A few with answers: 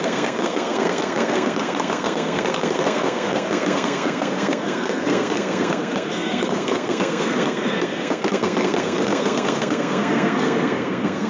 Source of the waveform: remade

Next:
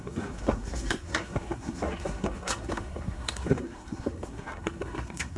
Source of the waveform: remade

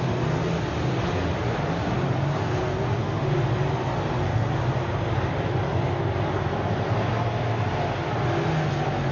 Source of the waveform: recorded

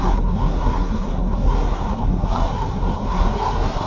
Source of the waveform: remade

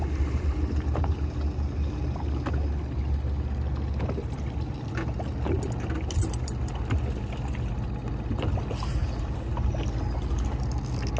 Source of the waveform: recorded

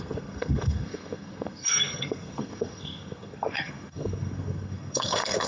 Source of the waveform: remade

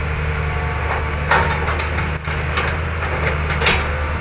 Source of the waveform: recorded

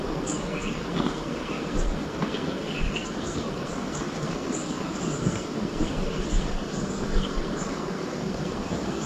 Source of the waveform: remade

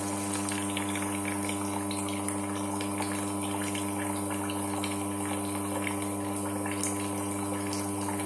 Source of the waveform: recorded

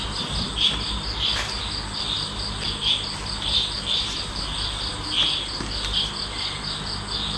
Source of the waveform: recorded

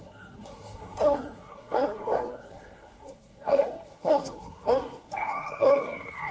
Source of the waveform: remade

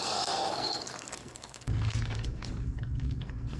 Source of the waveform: remade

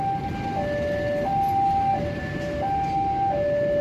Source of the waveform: recorded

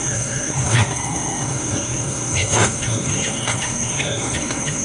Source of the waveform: remade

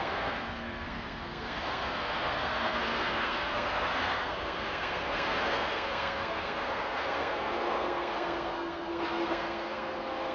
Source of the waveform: remade